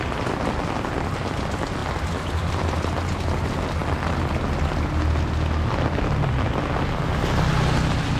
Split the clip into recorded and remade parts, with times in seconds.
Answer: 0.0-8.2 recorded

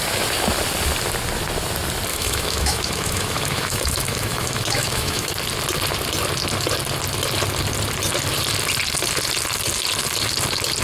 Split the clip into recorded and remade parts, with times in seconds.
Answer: 0.0-2.1 recorded; 2.1-5.3 remade; 5.3-10.8 recorded

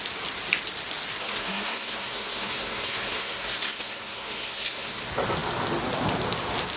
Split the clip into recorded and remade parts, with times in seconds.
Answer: 0.0-1.2 recorded; 1.2-5.0 remade; 5.0-6.8 recorded

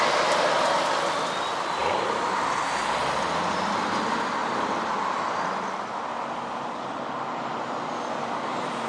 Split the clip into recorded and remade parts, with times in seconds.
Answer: 0.0-1.8 recorded; 1.8-2.6 remade; 2.6-3.0 recorded; 3.0-4.0 remade; 4.0-4.4 recorded; 4.4-5.2 remade; 5.2-8.9 recorded